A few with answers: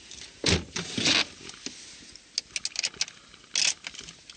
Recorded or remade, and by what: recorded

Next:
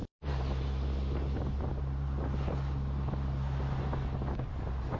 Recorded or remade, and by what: recorded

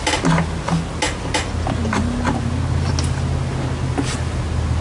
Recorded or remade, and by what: recorded